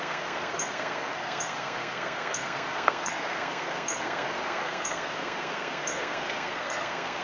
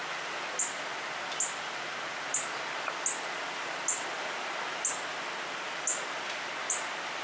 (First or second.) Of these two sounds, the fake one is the first